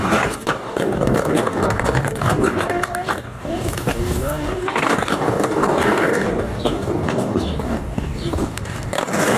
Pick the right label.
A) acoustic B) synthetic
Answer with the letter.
B